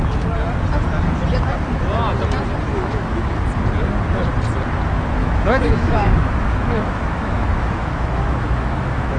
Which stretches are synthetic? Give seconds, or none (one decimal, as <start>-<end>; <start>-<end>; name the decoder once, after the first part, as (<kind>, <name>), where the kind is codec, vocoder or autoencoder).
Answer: 2.7-3.3 (autoencoder, DAC-VAE); 5.2-9.2